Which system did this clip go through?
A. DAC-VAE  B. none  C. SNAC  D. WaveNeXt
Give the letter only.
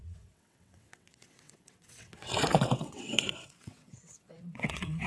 D